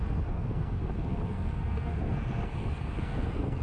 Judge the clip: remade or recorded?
remade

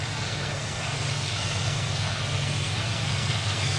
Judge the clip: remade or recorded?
remade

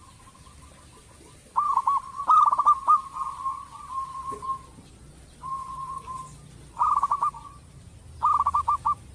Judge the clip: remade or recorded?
recorded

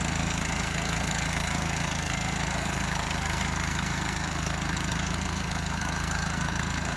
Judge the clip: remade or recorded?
remade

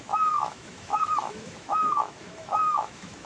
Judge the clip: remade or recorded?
remade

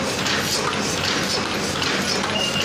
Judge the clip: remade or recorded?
recorded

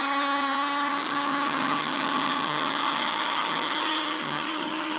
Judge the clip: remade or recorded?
remade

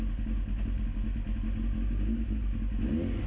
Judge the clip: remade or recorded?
recorded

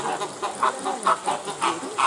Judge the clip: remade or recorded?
recorded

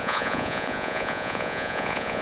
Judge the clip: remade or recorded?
remade